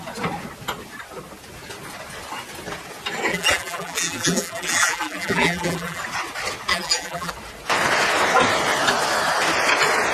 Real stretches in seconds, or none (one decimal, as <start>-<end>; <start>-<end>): 0.0-3.3; 6.0-6.7; 7.3-10.1